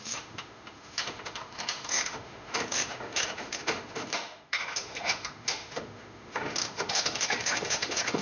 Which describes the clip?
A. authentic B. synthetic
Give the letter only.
B